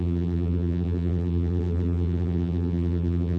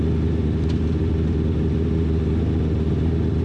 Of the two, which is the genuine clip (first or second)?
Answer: second